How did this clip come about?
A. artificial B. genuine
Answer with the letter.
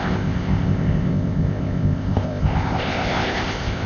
A